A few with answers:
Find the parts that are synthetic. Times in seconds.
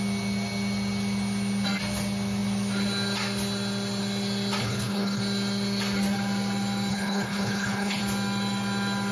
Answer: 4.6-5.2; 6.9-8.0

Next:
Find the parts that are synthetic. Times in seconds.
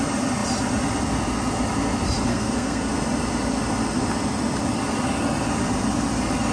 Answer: 2.3-2.9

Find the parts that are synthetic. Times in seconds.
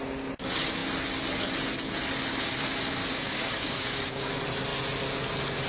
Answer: 3.1-4.3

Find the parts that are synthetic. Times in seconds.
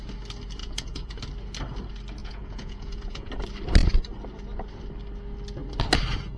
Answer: 0.6-1.2; 2.2-3.3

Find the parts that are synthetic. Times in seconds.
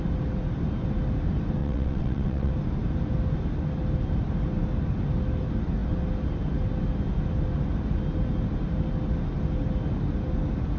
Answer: 1.6-2.5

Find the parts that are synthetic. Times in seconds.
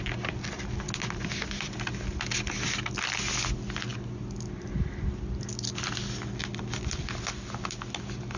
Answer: none